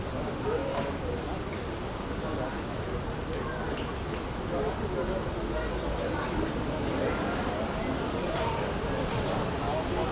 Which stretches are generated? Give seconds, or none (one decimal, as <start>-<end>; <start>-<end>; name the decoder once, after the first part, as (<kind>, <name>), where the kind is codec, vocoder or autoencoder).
none